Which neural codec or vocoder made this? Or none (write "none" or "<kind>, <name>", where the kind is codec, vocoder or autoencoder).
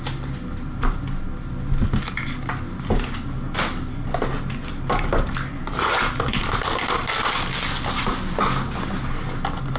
none